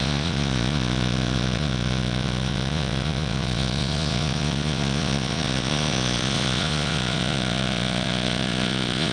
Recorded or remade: remade